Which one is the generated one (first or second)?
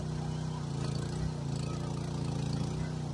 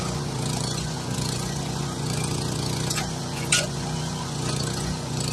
second